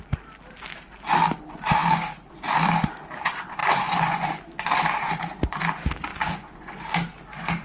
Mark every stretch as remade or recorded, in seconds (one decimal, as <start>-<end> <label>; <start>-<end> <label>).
0.0-3.6 recorded; 3.6-4.4 remade; 4.4-6.1 recorded; 6.1-6.8 remade; 6.8-7.6 recorded